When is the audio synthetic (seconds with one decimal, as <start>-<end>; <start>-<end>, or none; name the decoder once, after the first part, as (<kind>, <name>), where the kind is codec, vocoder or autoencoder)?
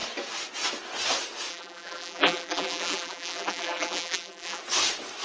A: 1.5-4.6 (vocoder, BigVGAN v2)